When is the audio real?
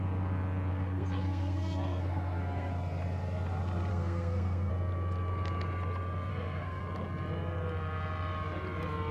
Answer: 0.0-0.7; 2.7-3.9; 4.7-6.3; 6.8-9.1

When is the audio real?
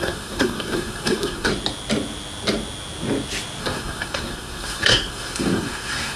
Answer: 1.5-3.6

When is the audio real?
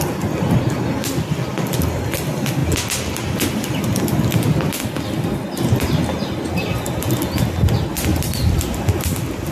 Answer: 0.0-9.5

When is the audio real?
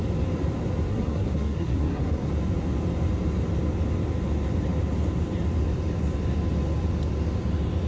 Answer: 0.0-0.9; 2.3-7.9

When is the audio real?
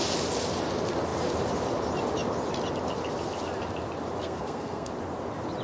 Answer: 0.0-4.2; 4.9-5.6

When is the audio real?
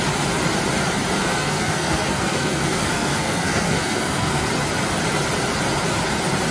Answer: 0.0-1.2; 4.5-6.5